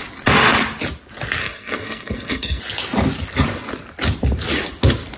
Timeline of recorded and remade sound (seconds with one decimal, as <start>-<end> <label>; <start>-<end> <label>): 0.0-1.4 recorded; 1.4-2.6 remade; 2.6-5.2 recorded